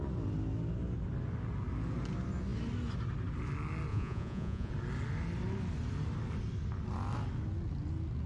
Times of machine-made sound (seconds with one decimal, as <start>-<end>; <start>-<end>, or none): 3.9-4.7